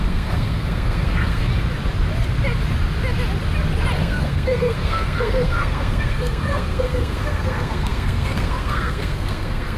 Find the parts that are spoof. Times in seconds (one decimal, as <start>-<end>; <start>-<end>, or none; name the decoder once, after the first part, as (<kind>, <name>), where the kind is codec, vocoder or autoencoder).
0.0-1.5 (codec, SNAC); 4.0-9.8